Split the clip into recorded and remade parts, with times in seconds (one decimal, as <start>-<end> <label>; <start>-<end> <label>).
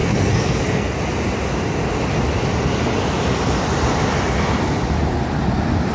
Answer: 0.0-0.9 remade; 0.9-5.9 recorded